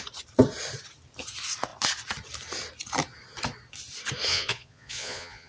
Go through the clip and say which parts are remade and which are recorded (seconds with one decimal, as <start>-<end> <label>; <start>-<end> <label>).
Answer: 0.0-4.3 recorded; 4.3-5.5 remade